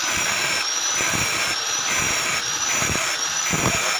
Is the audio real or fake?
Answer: fake